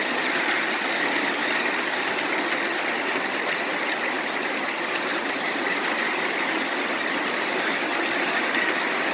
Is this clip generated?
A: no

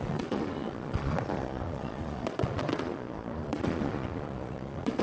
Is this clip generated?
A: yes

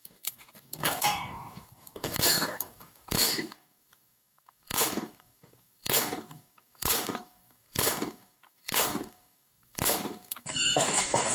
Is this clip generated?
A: yes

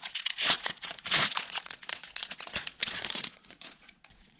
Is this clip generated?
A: yes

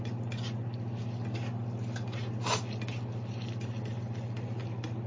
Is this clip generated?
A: no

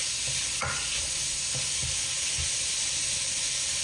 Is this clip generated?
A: no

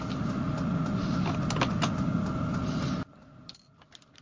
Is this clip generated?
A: no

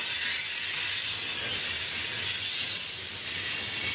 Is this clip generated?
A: no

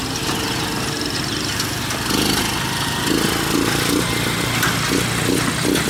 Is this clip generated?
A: no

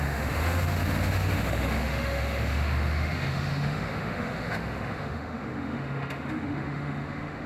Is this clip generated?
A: yes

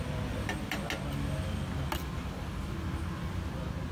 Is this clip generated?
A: no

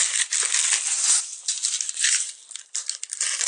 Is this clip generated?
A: no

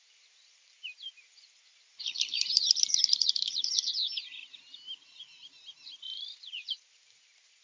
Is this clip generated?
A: yes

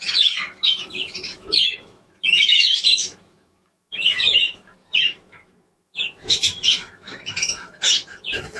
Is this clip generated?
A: yes